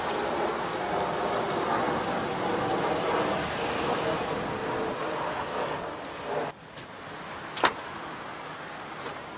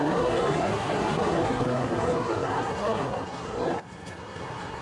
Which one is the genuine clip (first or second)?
first